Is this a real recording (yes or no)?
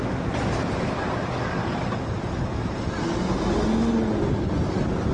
yes